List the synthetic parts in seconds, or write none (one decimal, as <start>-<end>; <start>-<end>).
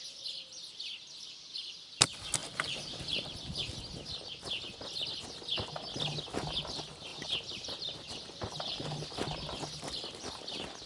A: 2.4-3.7